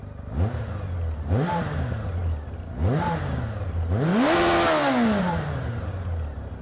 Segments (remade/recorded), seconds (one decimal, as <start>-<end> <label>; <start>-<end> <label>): 0.0-1.3 recorded; 1.3-4.1 remade; 4.1-5.2 recorded; 5.2-6.6 remade